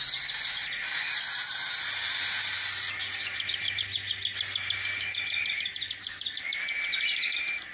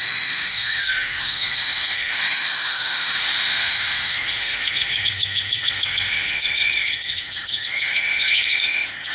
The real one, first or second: first